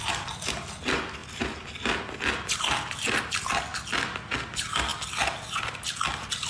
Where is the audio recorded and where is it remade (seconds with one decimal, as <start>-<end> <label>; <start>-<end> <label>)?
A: 0.0-6.5 recorded